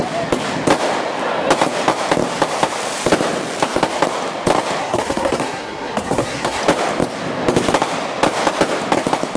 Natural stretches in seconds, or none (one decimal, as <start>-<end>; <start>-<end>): 0.0-4.8; 6.6-9.4